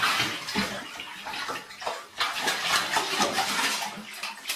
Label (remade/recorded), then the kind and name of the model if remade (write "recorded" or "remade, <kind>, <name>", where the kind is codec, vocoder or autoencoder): recorded